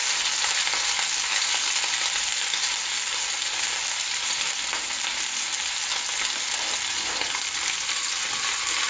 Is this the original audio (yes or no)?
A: yes